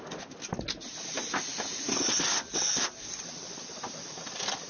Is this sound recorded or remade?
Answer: recorded